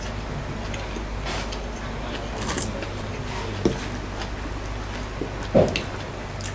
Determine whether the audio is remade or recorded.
recorded